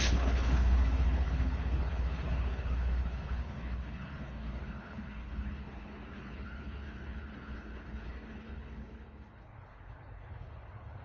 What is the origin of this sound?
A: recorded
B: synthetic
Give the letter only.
B